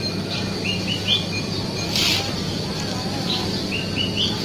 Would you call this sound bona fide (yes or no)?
yes